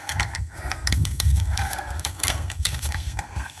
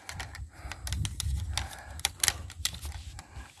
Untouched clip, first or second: second